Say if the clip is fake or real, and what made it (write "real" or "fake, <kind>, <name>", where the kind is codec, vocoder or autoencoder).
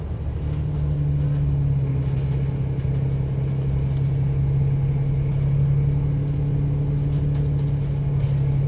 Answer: real